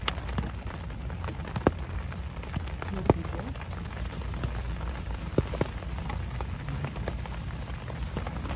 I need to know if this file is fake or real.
real